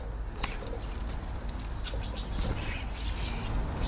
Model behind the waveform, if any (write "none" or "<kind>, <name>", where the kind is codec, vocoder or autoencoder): none